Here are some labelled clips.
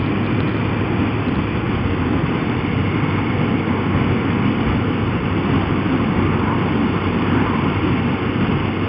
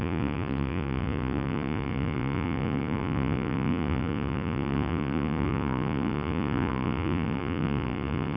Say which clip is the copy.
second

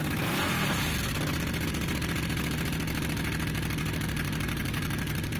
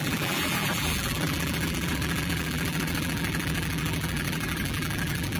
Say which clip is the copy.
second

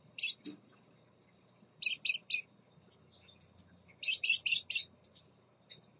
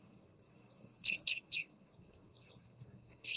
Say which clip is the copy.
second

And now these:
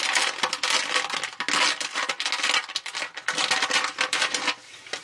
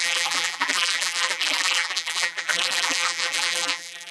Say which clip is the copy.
second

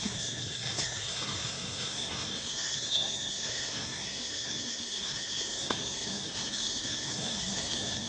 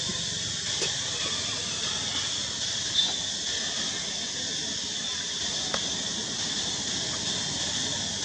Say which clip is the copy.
first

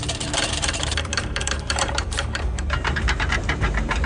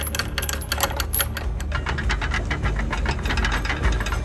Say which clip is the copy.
first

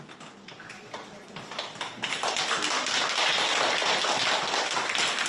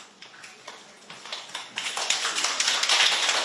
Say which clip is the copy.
second